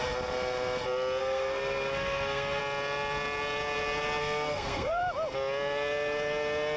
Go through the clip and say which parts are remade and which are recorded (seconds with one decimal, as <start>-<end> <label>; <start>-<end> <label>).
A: 0.0-1.2 recorded; 1.2-2.6 remade; 2.6-4.2 recorded; 4.2-5.0 remade; 5.0-6.8 recorded